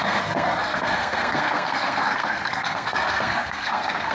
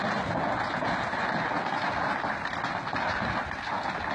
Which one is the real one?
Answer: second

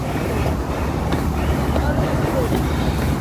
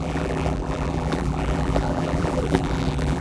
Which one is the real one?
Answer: first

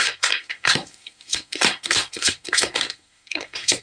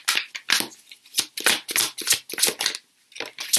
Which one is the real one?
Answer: second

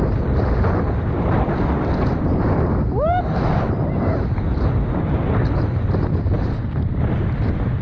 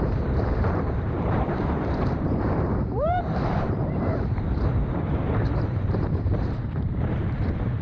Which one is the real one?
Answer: first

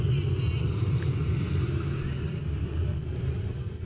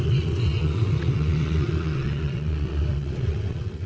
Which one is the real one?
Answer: first